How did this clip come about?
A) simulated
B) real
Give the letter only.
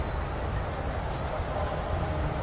B